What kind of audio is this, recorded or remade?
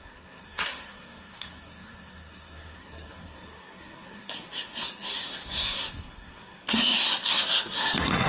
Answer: remade